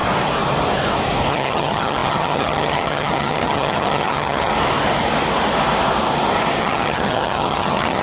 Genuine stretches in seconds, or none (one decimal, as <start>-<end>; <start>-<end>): 0.0-1.3; 4.5-6.6